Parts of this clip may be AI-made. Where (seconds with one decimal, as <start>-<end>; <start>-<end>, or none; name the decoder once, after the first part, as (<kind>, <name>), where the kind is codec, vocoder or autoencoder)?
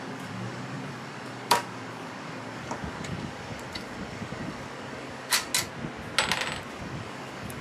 0.0-5.5 (codec, DAC); 6.7-7.6